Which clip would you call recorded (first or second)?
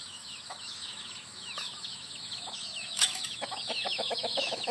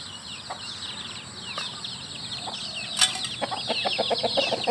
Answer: second